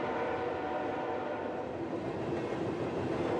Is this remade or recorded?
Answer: recorded